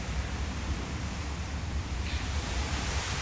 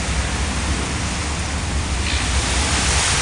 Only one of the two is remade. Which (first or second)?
first